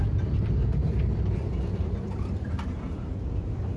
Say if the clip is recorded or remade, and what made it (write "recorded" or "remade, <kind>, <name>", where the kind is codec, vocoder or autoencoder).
recorded